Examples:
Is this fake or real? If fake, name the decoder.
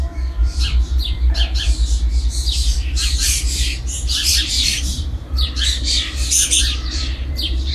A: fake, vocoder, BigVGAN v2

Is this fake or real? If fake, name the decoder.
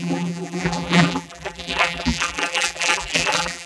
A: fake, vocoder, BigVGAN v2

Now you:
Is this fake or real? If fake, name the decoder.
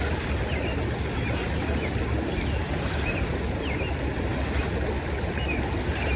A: real